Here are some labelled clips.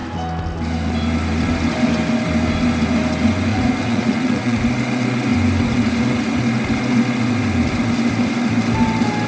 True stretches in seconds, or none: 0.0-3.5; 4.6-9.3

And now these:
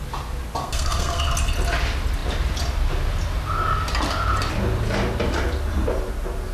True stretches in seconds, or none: 0.0-0.6; 1.2-6.5

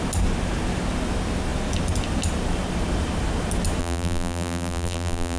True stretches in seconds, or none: 0.0-3.8

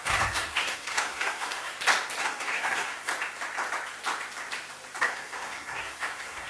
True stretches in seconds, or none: 1.7-2.2; 3.1-5.0

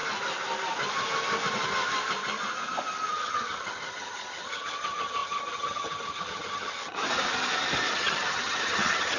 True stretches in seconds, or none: 0.0-3.1; 7.0-7.9

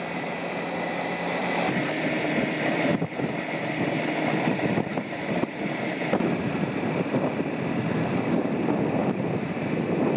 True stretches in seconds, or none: 0.0-1.4; 2.2-9.0